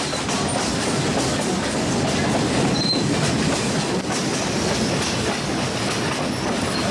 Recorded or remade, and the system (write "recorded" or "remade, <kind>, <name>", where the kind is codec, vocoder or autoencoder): recorded